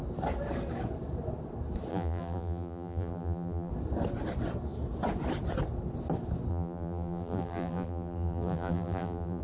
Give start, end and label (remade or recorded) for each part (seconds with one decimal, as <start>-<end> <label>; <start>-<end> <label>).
0.0-1.9 recorded; 1.9-3.7 remade; 3.7-6.5 recorded; 6.5-9.4 remade